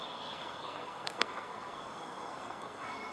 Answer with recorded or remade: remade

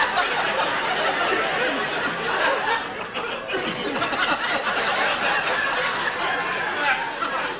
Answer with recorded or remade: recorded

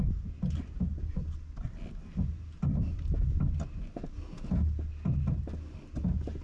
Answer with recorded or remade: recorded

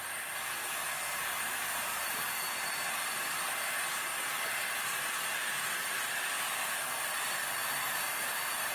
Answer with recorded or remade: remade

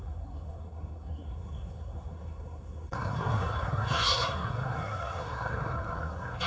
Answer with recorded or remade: remade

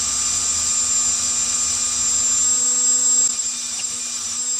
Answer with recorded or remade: recorded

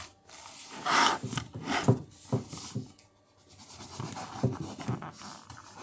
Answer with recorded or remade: recorded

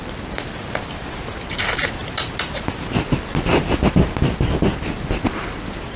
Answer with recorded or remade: recorded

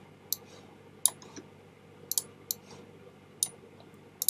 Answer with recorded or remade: recorded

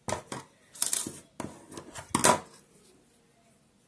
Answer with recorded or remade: recorded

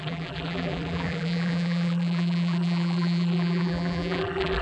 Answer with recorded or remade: remade